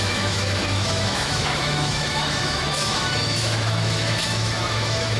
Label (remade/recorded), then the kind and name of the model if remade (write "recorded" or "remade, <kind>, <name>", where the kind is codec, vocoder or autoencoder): remade, autoencoder, DAC-VAE